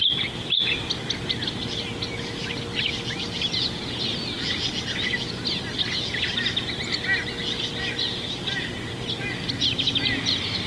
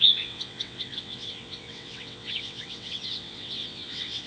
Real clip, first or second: first